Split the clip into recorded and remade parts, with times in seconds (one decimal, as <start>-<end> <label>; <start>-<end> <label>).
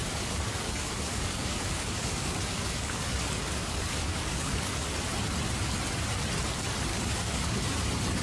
0.0-4.9 remade; 4.9-6.9 recorded; 6.9-7.6 remade; 7.6-8.2 recorded